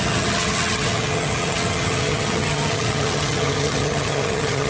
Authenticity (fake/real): fake